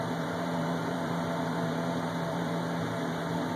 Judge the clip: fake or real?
fake